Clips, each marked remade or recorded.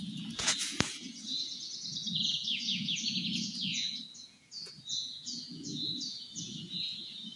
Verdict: remade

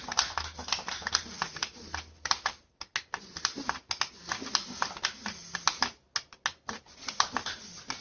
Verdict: recorded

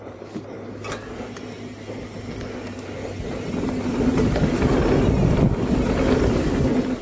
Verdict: recorded